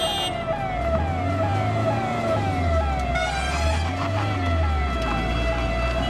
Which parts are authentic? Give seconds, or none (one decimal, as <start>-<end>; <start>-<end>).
0.0-6.1